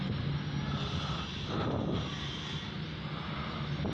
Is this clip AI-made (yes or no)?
no